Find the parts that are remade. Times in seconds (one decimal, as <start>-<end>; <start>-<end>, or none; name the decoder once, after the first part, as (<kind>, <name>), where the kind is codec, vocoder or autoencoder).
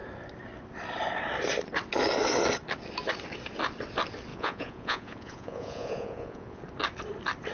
4.3-6.6 (vocoder, Vocos)